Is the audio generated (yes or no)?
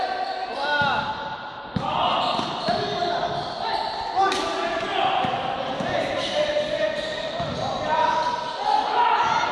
no